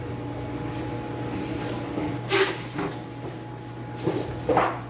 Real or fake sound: real